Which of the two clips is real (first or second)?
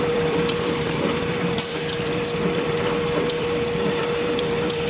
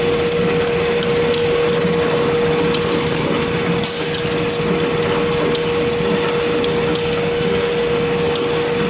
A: second